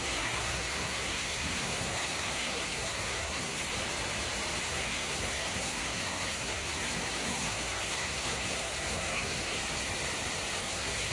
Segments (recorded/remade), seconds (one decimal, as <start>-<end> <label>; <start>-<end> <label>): 0.0-3.7 remade; 3.7-4.6 recorded; 4.6-9.6 remade; 9.6-10.6 recorded; 10.6-11.1 remade